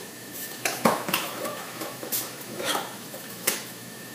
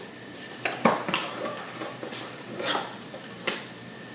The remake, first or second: first